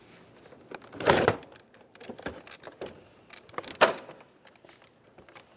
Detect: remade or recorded recorded